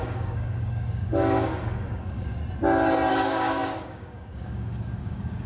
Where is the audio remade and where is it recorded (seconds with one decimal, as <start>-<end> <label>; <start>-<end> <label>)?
0.0-2.4 remade; 2.4-3.1 recorded; 3.1-5.5 remade

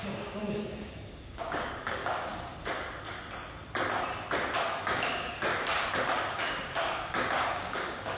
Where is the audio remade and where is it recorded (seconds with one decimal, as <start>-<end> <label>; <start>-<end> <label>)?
0.0-2.3 remade; 2.3-4.7 recorded; 4.7-5.5 remade; 5.5-6.3 recorded; 6.3-8.2 remade

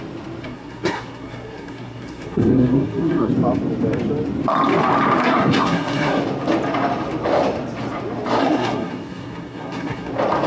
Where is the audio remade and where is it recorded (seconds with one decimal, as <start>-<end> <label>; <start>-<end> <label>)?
0.0-0.4 recorded; 0.4-3.3 remade; 3.3-5.2 recorded; 5.2-6.2 remade; 6.2-8.4 recorded; 8.4-10.1 remade; 10.1-10.5 recorded

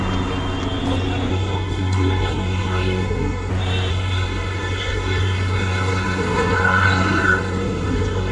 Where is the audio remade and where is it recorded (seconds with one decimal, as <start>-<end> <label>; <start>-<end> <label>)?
0.0-1.3 recorded; 1.3-3.5 remade; 3.5-3.9 recorded; 3.9-8.3 remade

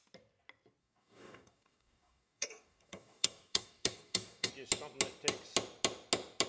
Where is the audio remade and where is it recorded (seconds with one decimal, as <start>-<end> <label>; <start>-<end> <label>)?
0.0-0.8 recorded; 0.8-4.5 remade; 4.5-6.5 recorded

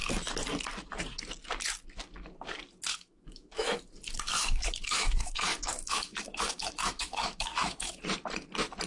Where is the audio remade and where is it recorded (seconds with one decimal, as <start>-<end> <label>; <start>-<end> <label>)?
0.0-2.9 recorded; 2.9-3.8 remade; 3.8-4.4 recorded; 4.4-8.0 remade; 8.0-8.9 recorded

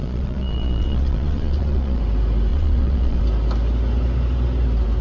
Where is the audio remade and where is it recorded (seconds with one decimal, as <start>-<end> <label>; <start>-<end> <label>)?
0.0-2.0 remade; 2.0-2.5 recorded; 2.5-3.2 remade; 3.2-5.0 recorded